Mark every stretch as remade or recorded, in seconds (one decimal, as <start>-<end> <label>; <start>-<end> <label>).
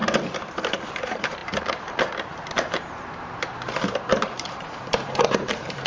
0.0-0.7 recorded; 0.7-5.9 remade